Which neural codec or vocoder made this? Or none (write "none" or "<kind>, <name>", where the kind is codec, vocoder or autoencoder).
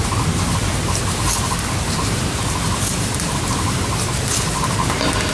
none